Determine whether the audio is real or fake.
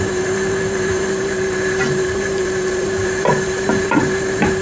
fake